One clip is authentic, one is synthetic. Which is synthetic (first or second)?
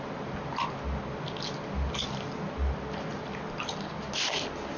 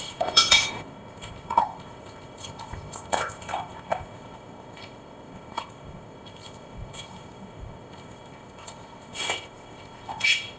second